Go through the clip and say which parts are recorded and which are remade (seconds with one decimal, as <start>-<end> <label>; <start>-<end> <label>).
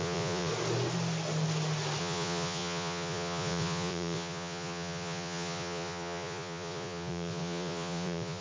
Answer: 0.0-0.5 remade; 0.5-2.0 recorded; 2.0-8.4 remade